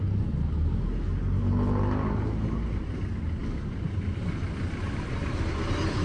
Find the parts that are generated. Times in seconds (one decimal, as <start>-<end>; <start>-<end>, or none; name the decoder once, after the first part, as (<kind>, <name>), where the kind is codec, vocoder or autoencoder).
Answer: none